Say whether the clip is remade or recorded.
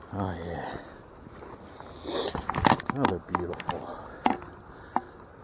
recorded